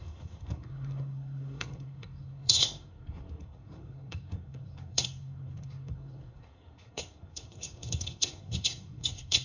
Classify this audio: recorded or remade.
remade